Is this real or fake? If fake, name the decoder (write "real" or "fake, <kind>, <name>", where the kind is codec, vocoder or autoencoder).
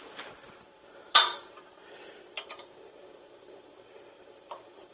fake, vocoder, BigVGAN v2